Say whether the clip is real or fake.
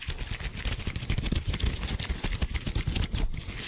real